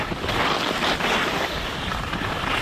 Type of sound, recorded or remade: recorded